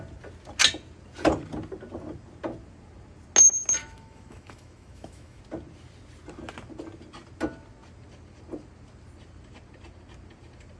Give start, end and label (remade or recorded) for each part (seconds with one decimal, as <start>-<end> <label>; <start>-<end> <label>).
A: 0.0-3.8 recorded; 3.8-5.4 remade; 5.4-10.8 recorded